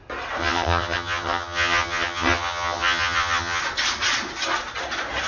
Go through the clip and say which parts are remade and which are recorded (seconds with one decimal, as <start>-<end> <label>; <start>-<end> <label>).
0.0-0.4 recorded; 0.4-3.6 remade; 3.6-5.3 recorded